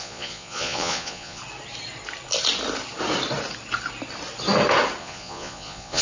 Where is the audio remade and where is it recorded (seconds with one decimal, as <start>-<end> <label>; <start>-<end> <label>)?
0.0-1.4 remade; 1.4-5.0 recorded; 5.0-6.0 remade